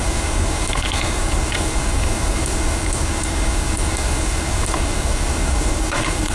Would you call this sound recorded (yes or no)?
no